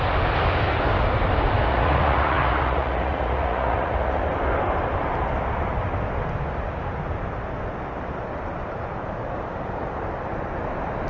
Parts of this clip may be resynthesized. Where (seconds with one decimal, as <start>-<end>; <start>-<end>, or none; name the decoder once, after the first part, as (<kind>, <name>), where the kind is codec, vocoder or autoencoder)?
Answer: 1.7-4.2 (vocoder, Vocos)